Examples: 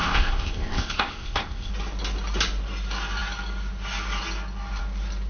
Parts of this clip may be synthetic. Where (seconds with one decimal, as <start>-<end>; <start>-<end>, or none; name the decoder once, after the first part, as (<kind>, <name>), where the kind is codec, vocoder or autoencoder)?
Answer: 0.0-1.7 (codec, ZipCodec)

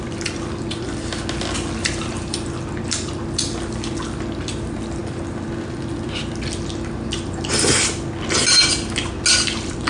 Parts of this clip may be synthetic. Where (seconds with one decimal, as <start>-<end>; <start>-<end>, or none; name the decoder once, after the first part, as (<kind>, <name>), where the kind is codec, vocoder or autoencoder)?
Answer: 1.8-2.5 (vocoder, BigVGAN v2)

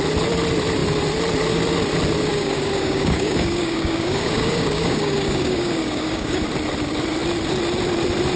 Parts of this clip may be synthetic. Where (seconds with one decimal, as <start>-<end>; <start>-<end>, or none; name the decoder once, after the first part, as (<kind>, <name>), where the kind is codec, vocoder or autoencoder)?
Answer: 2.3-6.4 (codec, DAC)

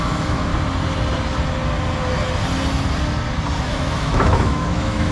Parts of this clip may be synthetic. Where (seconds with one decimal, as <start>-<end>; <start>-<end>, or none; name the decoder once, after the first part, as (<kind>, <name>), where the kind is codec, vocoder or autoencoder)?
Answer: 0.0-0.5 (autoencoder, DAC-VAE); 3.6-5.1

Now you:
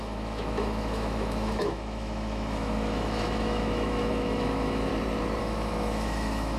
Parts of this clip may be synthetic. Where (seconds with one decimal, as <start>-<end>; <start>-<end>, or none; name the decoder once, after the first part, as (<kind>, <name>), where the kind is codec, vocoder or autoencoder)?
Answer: 0.0-4.9 (autoencoder, DAC-VAE); 5.4-6.6

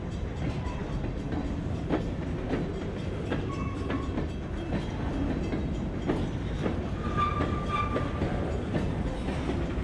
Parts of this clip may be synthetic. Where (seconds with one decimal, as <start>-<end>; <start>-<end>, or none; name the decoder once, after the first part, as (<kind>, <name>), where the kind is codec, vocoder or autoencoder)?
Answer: none

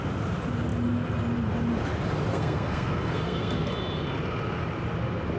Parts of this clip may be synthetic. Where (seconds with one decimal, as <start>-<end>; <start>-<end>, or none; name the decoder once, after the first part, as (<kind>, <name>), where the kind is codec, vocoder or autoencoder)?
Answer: 2.3-3.7 (codec, SNAC)

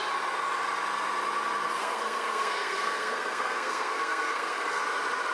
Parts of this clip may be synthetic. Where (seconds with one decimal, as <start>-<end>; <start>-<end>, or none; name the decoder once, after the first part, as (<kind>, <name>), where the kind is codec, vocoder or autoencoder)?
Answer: 1.8-4.8 (codec, SNAC)